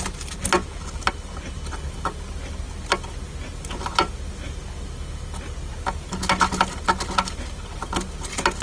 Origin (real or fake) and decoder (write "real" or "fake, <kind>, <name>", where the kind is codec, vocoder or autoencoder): real